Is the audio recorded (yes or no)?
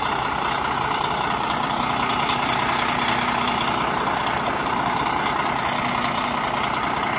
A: yes